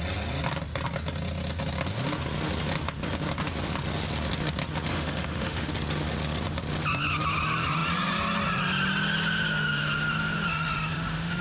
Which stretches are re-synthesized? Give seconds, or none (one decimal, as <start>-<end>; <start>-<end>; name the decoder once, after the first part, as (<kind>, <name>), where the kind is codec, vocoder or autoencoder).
4.9-5.7 (autoencoder, DAC-VAE); 10.5-11.4